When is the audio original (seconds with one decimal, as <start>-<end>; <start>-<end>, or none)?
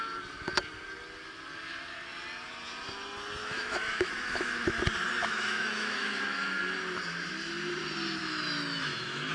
0.0-3.4; 4.8-5.2; 6.6-8.2